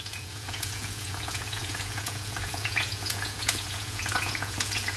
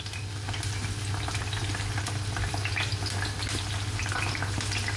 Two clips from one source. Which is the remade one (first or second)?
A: first